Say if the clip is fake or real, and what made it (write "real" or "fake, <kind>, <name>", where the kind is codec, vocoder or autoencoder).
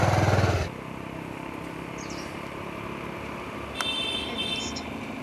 real